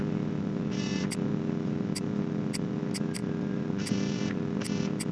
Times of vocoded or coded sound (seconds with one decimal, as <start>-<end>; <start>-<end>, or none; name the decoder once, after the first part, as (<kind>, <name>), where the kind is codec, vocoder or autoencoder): none